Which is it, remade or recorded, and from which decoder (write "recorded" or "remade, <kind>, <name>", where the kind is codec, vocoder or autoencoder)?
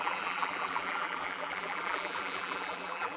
remade, vocoder, BigVGAN v2